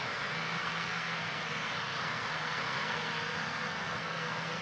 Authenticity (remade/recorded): remade